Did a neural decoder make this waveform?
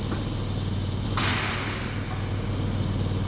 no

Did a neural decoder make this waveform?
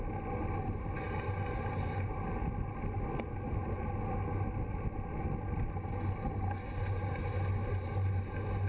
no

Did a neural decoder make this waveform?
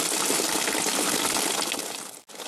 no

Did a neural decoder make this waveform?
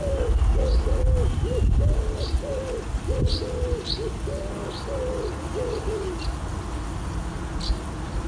no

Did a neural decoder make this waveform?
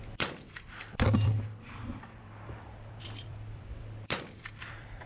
yes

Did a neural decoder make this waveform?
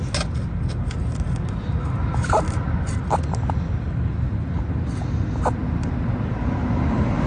no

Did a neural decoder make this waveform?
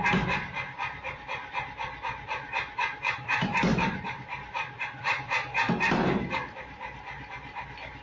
yes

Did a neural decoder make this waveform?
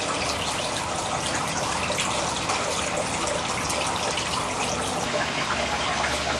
no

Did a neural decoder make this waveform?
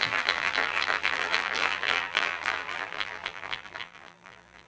yes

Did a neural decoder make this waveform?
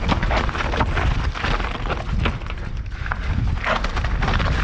no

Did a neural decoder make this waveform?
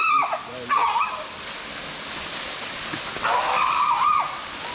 no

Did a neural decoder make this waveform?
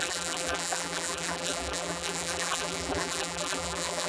yes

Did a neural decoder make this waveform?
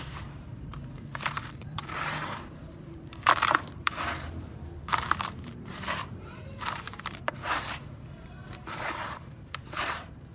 yes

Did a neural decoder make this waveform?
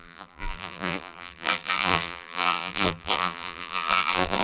yes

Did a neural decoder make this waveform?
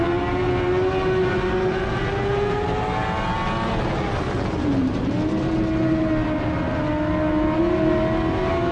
no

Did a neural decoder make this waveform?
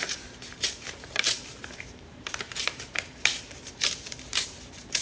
yes